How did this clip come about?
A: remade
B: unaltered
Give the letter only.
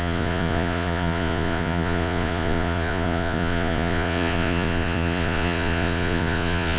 A